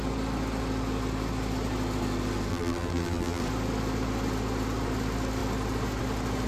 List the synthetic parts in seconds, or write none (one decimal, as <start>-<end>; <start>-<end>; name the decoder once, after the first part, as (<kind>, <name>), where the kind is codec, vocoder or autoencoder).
2.5-3.4 (vocoder, BigVGAN v2)